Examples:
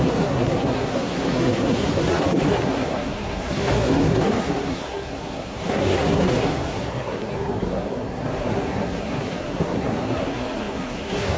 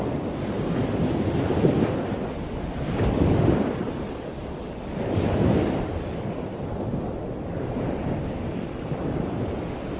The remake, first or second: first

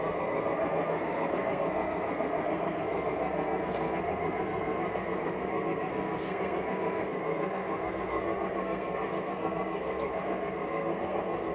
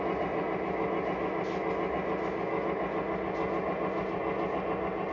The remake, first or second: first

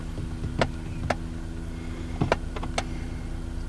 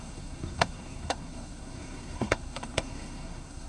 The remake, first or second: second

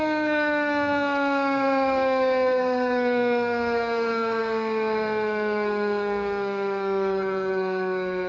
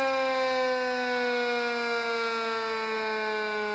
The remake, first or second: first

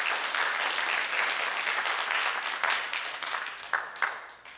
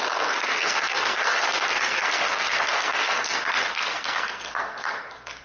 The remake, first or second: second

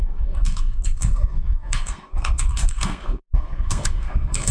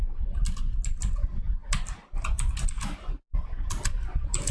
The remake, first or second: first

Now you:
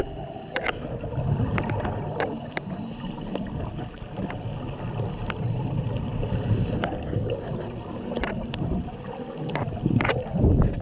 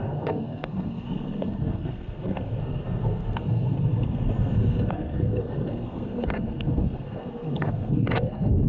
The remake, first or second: second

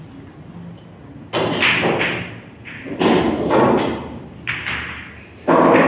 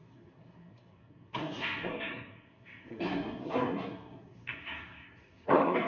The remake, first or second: second